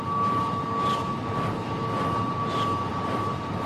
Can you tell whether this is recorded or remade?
recorded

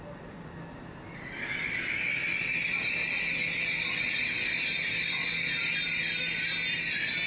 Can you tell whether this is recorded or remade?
recorded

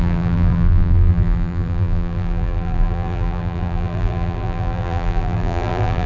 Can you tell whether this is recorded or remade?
remade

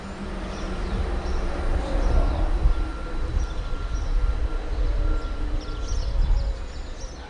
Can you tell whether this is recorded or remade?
recorded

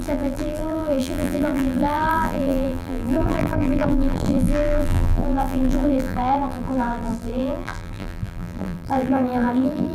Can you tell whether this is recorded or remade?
remade